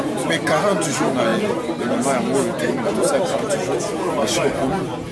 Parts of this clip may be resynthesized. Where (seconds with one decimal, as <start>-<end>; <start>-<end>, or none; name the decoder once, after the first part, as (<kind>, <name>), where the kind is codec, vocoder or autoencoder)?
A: none